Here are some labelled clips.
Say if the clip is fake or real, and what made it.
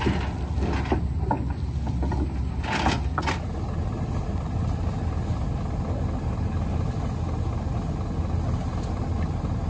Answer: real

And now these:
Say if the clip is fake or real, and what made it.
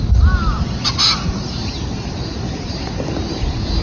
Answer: real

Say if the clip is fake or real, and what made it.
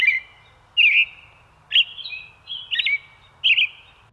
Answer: real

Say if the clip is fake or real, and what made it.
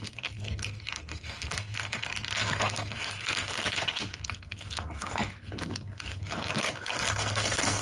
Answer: fake, codec, SNAC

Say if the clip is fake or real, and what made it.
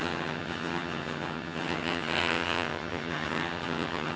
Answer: fake, vocoder, HiFi-GAN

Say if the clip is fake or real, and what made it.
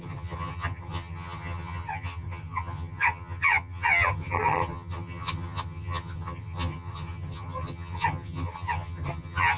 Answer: fake, vocoder, HiFi-GAN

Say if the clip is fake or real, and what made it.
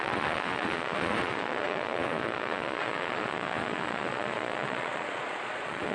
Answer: fake, vocoder, Vocos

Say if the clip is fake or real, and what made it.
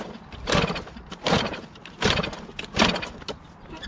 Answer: real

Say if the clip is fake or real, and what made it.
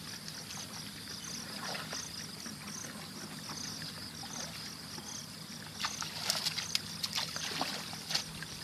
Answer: real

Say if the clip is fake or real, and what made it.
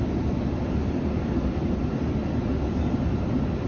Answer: real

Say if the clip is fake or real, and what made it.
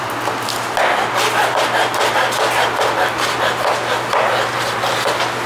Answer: real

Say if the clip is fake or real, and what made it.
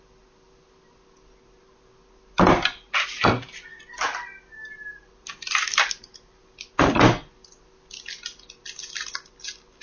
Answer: real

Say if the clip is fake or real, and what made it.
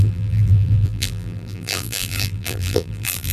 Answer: fake, vocoder, BigVGAN v2